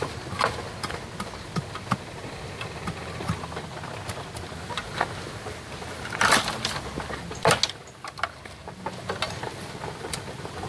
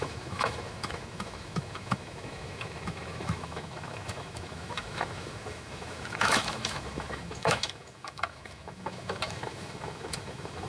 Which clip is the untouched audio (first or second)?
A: first